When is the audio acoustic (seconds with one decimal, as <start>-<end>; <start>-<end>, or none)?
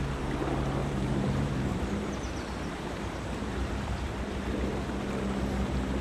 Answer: 0.0-0.8; 4.4-6.0